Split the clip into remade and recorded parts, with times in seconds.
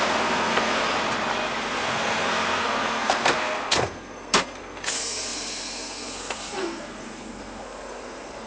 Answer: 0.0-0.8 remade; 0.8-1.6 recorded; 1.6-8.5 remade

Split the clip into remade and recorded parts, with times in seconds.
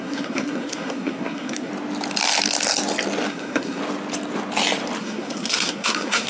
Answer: 0.0-1.7 remade; 1.7-3.3 recorded; 3.3-3.8 remade; 3.8-5.0 recorded; 5.0-6.3 remade